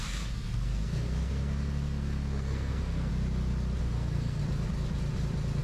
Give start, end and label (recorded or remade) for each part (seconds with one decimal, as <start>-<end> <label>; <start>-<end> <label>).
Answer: 0.0-3.1 remade; 3.1-3.8 recorded; 3.8-4.4 remade; 4.4-5.6 recorded